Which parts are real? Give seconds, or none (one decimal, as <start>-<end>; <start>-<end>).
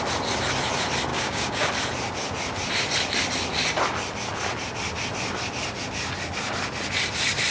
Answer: 0.0-1.1; 1.7-7.5